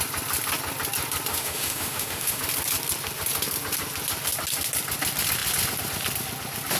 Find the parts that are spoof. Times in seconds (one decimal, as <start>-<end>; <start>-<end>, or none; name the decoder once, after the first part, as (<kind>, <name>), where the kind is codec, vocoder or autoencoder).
1.3-2.4 (autoencoder, DAC-VAE)